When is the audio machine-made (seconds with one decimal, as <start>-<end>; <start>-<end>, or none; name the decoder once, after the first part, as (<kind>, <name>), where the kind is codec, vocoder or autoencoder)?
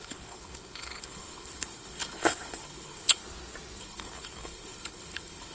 0.0-3.2 (codec, HILCodec); 3.8-5.5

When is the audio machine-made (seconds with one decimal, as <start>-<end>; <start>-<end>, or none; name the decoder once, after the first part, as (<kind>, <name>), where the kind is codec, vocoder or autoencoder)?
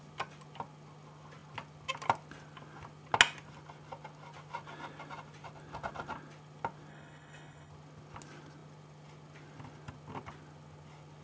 6.9-7.7 (codec, HILCodec)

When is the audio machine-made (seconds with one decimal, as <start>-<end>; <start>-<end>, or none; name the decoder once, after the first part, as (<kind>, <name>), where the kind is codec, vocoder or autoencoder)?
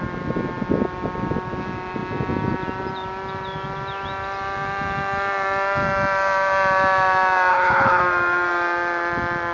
7.5-8.0 (codec, HILCodec)